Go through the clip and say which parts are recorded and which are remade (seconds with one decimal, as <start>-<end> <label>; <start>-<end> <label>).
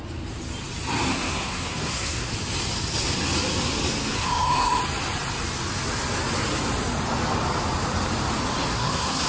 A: 0.0-1.1 recorded; 1.1-2.3 remade; 2.3-4.2 recorded; 4.2-4.8 remade; 4.8-8.7 recorded; 8.7-9.3 remade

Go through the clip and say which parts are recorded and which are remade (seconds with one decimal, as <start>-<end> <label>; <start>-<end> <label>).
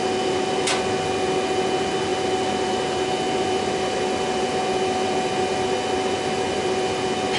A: 0.0-7.4 recorded